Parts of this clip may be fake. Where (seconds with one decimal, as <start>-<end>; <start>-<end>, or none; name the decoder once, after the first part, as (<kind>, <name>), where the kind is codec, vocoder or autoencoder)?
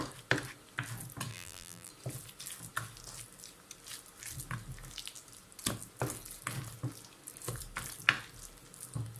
1.3-1.9 (vocoder, BigVGAN v2)